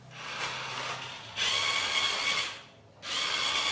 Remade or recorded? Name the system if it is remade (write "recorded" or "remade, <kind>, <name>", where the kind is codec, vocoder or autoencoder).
recorded